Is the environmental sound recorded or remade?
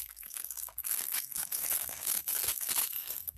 remade